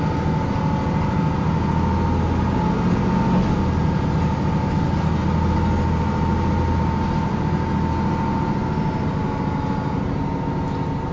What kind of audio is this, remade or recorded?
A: recorded